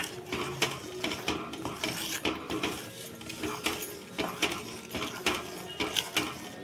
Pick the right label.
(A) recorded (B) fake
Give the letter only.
A